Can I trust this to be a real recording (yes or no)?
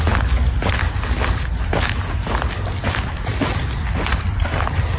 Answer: yes